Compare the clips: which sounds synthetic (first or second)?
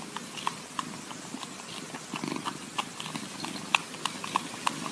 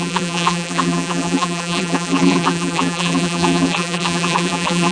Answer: second